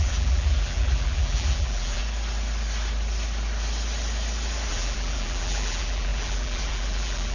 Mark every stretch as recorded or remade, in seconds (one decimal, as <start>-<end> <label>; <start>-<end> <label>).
0.0-2.0 remade; 2.0-4.7 recorded; 4.7-7.3 remade